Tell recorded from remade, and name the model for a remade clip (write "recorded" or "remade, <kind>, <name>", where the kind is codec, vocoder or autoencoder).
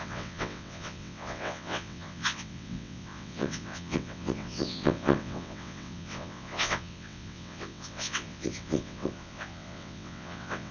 remade, vocoder, WaveNeXt